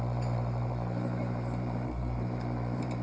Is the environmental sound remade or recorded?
remade